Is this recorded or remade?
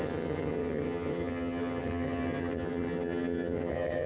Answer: remade